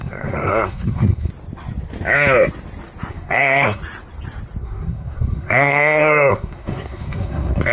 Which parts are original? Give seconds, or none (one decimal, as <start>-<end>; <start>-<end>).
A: 1.3-3.1; 3.8-4.6